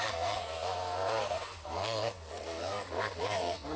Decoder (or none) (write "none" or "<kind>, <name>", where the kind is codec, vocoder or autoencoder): codec, SNAC